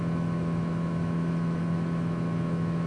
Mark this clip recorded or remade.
remade